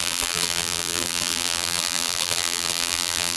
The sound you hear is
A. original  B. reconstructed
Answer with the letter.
B